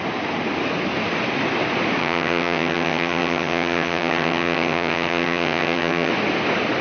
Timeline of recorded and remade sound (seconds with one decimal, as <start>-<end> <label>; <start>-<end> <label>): 0.0-2.0 recorded; 2.0-6.1 remade; 6.1-6.8 recorded